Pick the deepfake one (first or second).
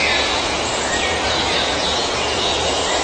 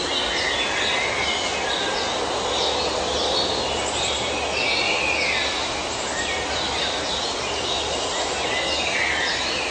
first